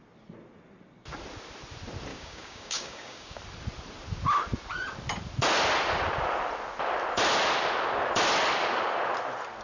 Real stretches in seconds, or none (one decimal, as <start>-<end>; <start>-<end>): 0.0-2.1; 3.4-9.6